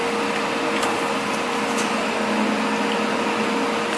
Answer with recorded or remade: recorded